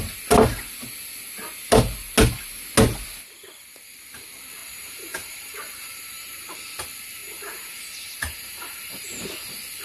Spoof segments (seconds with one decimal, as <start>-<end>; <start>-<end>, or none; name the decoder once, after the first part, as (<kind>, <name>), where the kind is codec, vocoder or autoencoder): 4.6-6.5 (vocoder, BigVGAN v2); 7.2-9.2

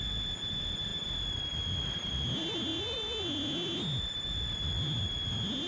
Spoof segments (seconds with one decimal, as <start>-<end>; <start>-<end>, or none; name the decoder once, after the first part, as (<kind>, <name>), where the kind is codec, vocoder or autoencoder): none

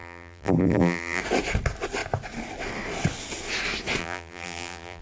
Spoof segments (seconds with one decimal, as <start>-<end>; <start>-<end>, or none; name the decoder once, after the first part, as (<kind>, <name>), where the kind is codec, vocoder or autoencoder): 0.0-1.2 (vocoder, BigVGAN v2); 4.0-5.0